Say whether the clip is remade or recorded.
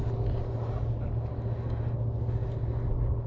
recorded